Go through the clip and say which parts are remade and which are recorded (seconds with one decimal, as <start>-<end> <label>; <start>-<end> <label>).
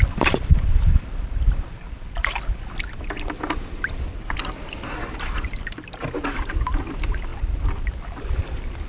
0.0-3.9 remade; 3.9-7.3 recorded; 7.3-8.9 remade